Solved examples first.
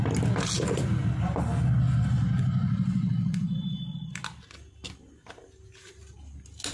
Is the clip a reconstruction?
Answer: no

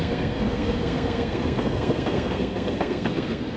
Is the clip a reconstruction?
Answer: yes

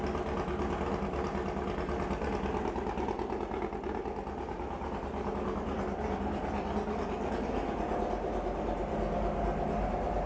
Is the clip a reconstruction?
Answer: no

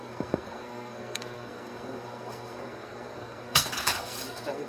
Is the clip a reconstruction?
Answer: yes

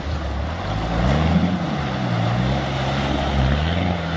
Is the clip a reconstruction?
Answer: no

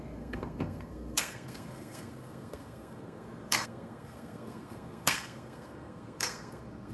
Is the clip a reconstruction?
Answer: yes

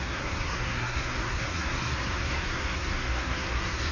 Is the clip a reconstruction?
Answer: yes